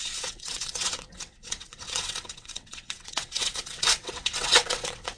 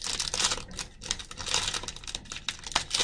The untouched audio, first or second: second